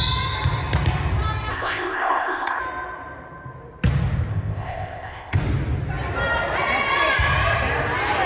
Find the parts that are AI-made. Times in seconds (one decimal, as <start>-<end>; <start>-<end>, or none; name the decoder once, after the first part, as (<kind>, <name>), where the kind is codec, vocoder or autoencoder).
1.5-2.6 (codec, ZipCodec); 4.3-5.4